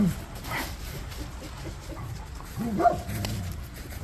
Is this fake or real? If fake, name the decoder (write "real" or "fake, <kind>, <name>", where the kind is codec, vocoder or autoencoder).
real